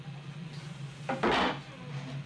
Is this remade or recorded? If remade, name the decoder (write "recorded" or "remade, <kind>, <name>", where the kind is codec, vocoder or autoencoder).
recorded